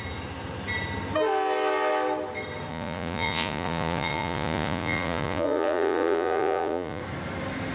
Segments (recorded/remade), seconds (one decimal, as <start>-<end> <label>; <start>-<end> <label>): 0.0-2.7 recorded; 2.7-7.0 remade; 7.0-7.7 recorded